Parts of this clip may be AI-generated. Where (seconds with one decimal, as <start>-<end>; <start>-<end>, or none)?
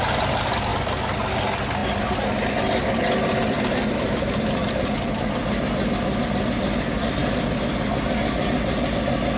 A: none